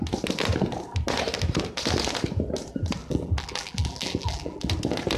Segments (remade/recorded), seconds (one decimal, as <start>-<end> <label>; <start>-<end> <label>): 0.0-3.0 recorded; 3.0-4.7 remade; 4.7-5.2 recorded